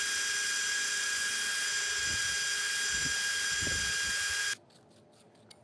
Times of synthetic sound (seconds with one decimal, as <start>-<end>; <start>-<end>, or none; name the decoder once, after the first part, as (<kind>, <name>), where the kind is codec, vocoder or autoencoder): 0.7-1.3 (vocoder, Vocos)